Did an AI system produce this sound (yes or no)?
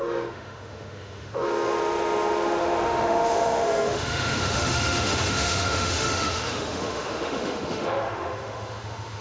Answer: yes